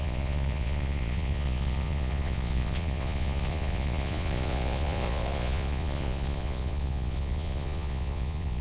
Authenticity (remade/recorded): remade